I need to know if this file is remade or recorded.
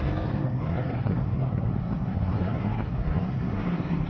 remade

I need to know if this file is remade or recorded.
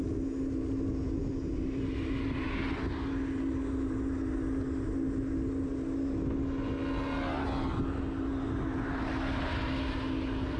recorded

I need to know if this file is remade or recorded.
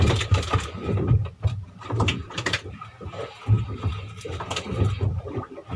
recorded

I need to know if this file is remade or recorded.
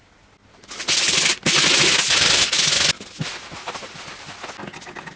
recorded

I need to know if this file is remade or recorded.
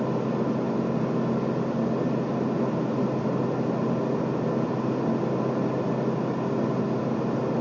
recorded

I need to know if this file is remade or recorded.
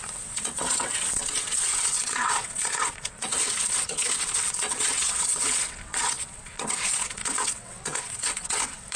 remade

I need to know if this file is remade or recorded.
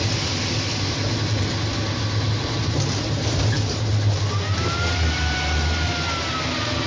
recorded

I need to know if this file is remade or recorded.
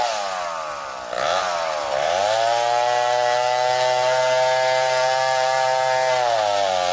recorded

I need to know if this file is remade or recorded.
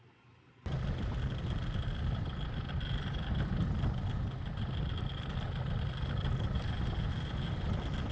recorded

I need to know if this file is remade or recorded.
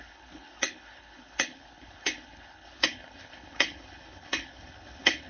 remade